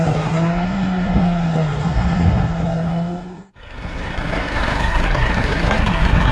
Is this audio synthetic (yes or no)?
yes